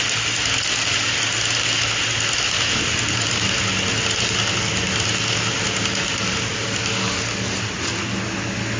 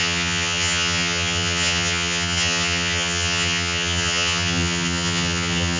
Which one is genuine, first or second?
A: first